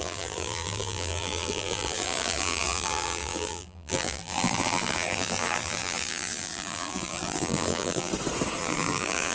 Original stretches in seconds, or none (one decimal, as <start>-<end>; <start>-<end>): 8.1-8.6